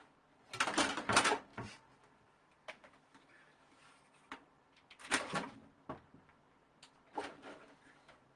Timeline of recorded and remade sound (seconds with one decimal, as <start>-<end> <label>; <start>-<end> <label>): 0.0-8.4 recorded